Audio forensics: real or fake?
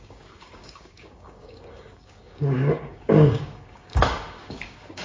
fake